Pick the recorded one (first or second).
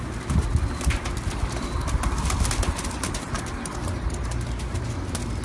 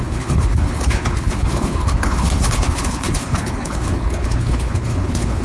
first